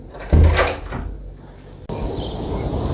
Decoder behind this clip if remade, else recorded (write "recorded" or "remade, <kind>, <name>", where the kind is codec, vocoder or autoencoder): recorded